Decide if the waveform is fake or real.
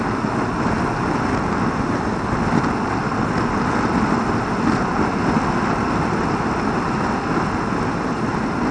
real